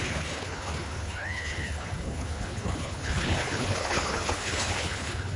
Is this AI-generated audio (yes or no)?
yes